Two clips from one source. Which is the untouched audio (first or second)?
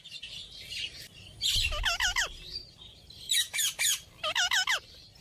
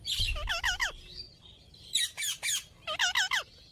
second